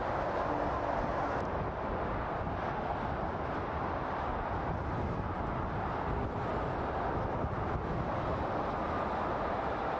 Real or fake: real